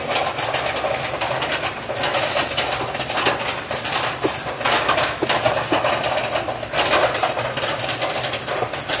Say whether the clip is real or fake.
real